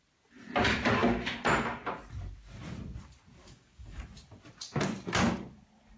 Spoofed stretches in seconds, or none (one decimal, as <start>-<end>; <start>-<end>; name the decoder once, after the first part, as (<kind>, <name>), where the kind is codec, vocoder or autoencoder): 3.4-4.0 (codec, DAC)